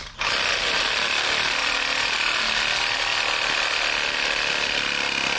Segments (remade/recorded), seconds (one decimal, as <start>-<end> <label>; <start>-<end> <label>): 0.0-1.6 recorded; 1.6-2.4 remade; 2.4-3.1 recorded; 3.1-4.5 remade; 4.5-5.4 recorded